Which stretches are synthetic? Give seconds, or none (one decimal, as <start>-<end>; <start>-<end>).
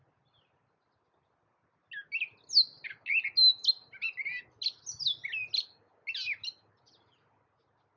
none